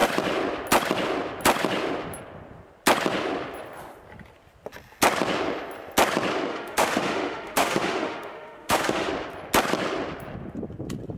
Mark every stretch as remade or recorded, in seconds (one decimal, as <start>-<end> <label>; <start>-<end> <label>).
0.0-6.5 recorded; 6.5-9.1 remade; 9.1-11.2 recorded